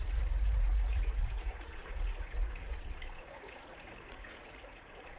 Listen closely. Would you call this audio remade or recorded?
remade